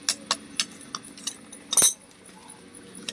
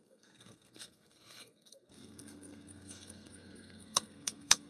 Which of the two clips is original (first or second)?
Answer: first